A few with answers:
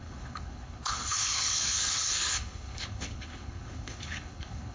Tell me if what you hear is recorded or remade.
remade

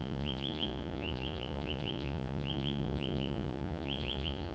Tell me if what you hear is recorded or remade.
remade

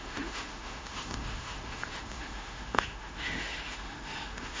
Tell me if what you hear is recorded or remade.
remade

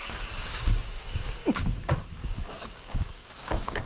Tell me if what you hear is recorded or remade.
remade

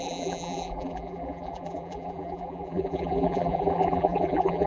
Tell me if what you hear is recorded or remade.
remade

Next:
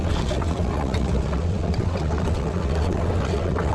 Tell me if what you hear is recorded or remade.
remade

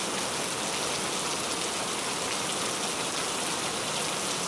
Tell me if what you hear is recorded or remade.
recorded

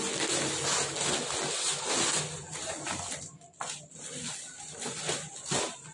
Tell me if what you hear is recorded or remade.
recorded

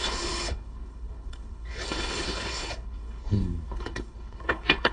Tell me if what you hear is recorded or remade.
remade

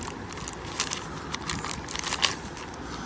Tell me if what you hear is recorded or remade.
recorded